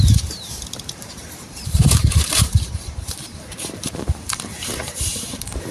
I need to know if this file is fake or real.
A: fake